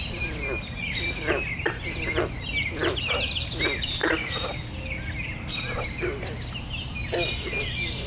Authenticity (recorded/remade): recorded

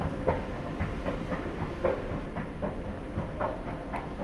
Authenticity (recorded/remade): recorded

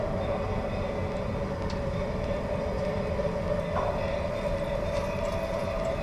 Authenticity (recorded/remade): recorded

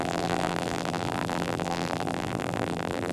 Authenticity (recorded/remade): remade